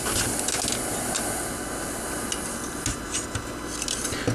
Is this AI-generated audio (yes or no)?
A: no